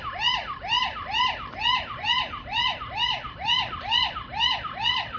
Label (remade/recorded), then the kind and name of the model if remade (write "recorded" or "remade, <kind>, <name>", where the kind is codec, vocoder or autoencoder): remade, vocoder, BigVGAN v2